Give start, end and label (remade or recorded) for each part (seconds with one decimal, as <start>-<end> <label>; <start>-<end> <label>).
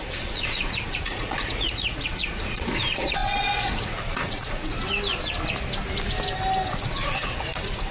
0.0-4.7 remade; 4.7-6.7 recorded; 6.7-7.9 remade